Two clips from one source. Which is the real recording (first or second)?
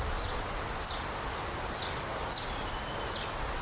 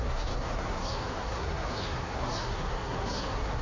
first